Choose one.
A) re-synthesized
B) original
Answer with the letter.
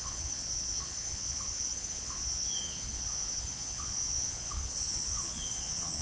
A